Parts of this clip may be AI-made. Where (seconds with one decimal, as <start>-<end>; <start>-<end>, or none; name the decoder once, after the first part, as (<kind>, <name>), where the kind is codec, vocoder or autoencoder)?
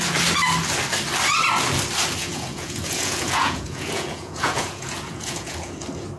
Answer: 2.2-5.7 (vocoder, Vocos)